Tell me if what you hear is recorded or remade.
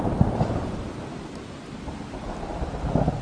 recorded